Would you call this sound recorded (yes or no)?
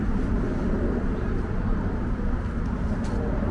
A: yes